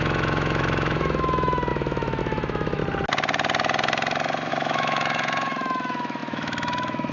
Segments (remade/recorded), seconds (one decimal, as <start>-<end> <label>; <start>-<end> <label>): 0.0-2.8 remade; 2.8-4.5 recorded; 4.5-7.1 remade